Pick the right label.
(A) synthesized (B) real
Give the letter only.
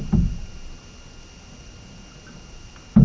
B